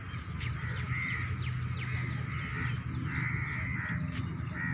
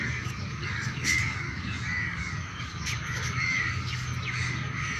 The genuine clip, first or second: first